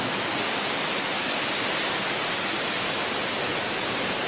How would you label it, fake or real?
real